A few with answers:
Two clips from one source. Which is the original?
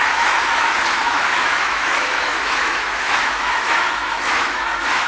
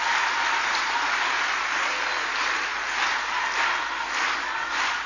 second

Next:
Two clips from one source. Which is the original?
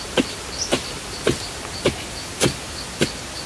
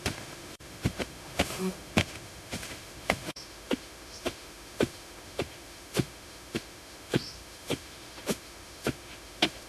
first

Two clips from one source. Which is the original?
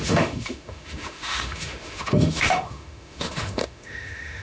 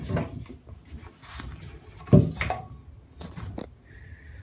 second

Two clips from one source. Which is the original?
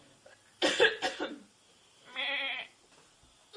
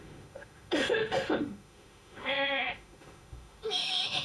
first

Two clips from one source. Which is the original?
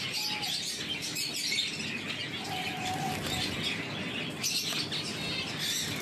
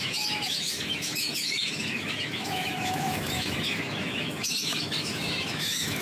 first